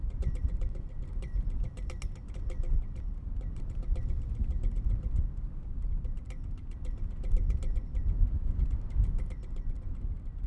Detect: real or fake real